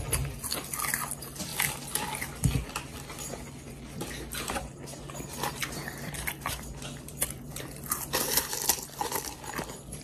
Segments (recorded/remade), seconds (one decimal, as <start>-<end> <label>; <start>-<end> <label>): 0.0-5.6 recorded; 5.6-9.0 remade; 9.0-10.0 recorded